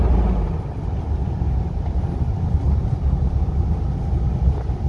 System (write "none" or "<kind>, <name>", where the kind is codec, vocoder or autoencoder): none